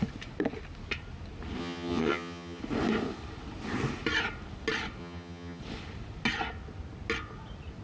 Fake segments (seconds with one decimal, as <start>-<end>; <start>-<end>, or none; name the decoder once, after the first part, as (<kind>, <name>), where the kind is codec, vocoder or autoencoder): 1.6-2.6 (vocoder, HiFi-GAN); 5.0-5.6